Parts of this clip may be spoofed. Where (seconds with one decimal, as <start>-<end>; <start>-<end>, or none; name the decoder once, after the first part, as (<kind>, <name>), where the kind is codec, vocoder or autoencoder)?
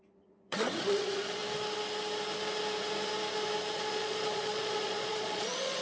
0.0-1.4 (vocoder, Vocos); 3.7-5.8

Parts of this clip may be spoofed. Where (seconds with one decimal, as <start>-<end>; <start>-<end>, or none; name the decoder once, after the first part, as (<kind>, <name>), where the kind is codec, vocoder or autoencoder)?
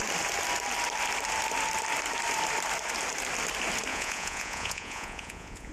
3.9-5.7 (vocoder, Vocos)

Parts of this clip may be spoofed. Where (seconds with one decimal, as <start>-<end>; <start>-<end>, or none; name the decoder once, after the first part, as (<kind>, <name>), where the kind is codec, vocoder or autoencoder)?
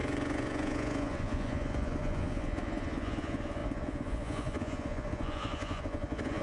0.0-6.4 (vocoder, Vocos)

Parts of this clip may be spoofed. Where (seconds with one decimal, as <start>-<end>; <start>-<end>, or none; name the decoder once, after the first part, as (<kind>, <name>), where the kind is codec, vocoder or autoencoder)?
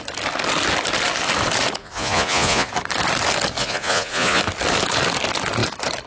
1.8-2.7 (vocoder, Vocos); 3.6-4.4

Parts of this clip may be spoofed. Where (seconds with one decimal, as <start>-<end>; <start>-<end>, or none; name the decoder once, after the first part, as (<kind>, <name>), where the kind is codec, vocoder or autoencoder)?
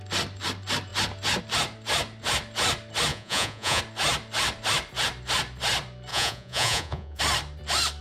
3.1-3.8 (vocoder, Vocos); 6.1-7.2